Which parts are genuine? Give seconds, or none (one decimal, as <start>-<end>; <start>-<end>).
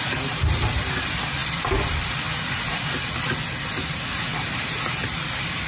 none